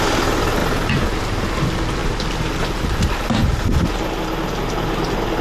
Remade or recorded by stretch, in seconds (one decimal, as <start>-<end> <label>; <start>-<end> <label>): 0.0-5.4 recorded